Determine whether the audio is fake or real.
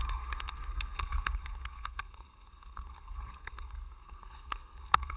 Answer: fake